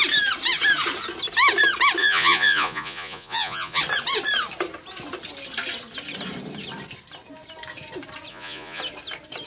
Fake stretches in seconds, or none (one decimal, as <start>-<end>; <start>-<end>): 2.0-3.8; 8.3-8.8